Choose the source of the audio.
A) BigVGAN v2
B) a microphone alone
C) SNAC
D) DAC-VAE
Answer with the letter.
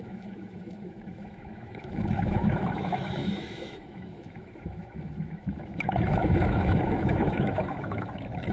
D